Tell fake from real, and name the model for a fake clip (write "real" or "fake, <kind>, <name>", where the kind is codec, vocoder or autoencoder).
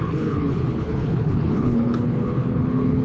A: fake, codec, HILCodec